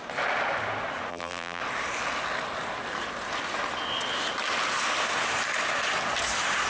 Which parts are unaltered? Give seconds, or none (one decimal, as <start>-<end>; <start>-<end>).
0.0-1.1; 1.6-6.7